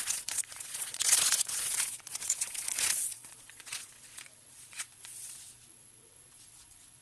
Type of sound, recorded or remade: remade